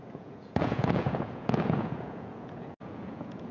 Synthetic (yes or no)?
yes